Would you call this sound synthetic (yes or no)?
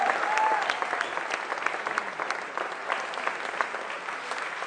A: no